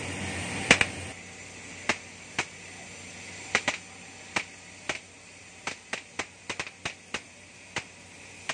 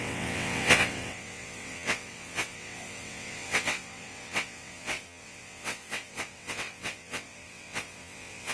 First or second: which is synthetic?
second